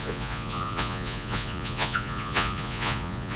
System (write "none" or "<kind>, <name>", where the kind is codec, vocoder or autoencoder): vocoder, Vocos